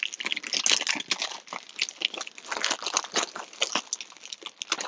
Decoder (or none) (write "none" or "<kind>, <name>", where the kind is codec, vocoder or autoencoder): none